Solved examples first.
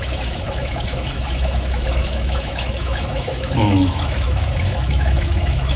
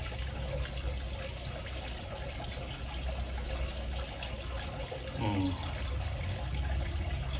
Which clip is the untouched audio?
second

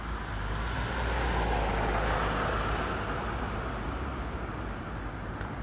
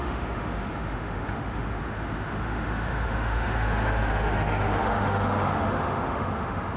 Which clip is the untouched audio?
first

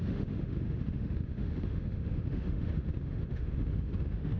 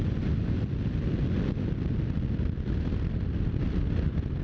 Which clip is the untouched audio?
second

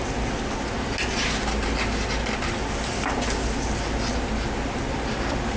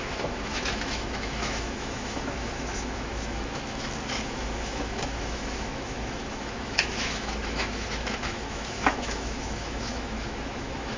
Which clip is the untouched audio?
first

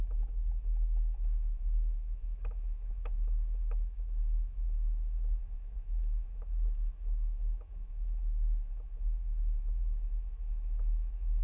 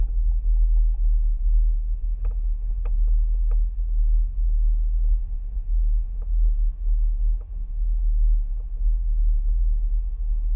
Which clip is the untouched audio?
second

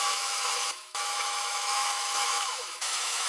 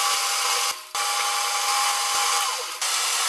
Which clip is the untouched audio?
second